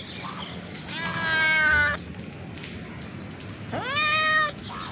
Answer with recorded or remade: recorded